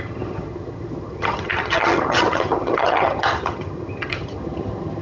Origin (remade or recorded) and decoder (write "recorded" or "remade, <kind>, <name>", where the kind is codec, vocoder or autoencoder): remade, vocoder, HiFi-GAN